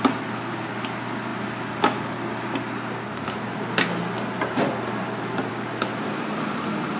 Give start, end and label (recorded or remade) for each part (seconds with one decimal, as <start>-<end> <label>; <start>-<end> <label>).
0.0-7.0 recorded

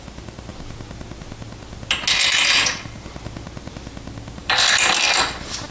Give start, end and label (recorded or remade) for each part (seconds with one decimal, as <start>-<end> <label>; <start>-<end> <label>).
0.0-4.4 recorded; 4.4-5.7 remade

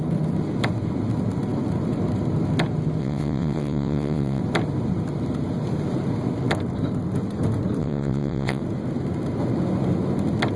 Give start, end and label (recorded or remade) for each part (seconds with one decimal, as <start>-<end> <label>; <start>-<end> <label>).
0.0-3.0 recorded; 3.0-4.4 remade; 4.4-7.8 recorded; 7.8-8.6 remade; 8.6-10.6 recorded

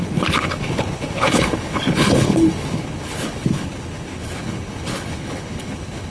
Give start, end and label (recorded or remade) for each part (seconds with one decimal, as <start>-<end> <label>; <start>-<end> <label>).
0.0-6.1 remade

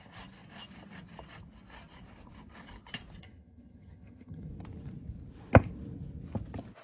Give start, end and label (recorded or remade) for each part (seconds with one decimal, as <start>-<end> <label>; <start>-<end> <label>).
0.0-3.2 recorded; 3.2-4.5 remade; 4.5-6.8 recorded

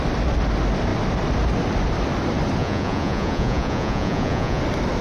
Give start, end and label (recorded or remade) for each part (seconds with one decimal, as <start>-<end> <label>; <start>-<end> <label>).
0.0-2.6 recorded; 2.6-4.6 remade; 4.6-5.0 recorded